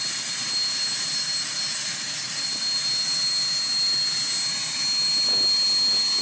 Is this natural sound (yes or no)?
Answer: yes